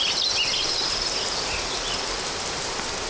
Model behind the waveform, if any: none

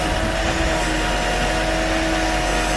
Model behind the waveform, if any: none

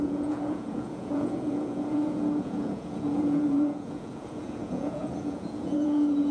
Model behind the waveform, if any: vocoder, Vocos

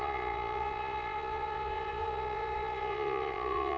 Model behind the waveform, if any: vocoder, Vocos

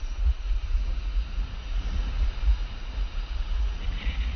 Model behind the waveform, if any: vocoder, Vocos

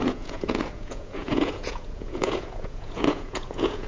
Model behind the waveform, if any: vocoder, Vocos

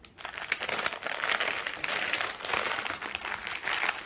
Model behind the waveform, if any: none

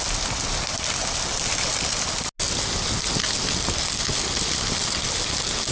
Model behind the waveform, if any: none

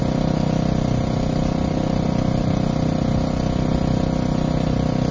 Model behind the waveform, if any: none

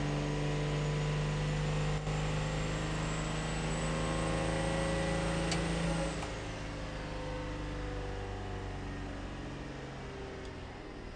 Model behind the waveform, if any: none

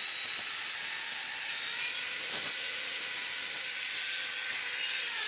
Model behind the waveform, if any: none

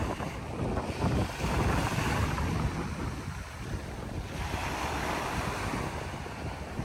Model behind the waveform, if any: none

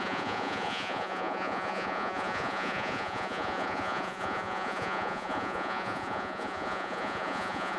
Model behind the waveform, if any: vocoder, Vocos